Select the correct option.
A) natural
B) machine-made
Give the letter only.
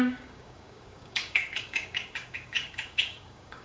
B